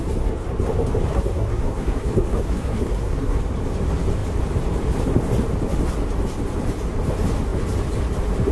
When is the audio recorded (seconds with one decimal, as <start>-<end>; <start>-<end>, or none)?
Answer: 0.0-1.1; 3.4-8.5